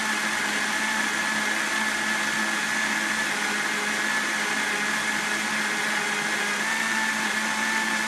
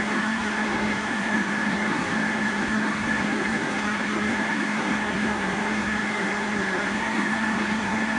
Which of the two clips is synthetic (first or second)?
second